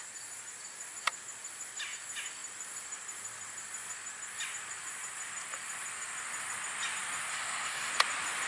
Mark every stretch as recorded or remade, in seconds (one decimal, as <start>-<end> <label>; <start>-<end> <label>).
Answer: 0.0-7.3 recorded; 7.3-7.9 remade; 7.9-8.5 recorded